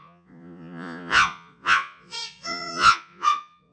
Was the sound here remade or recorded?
remade